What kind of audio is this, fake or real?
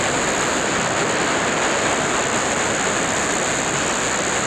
real